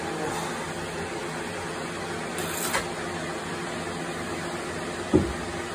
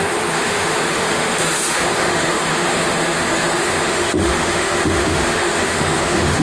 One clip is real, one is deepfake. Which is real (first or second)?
first